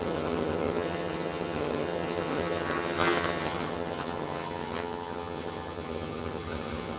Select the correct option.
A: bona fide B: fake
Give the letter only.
B